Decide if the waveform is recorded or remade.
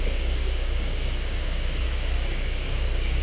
remade